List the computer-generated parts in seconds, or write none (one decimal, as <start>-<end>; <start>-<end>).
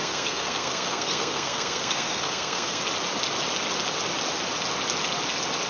0.0-2.8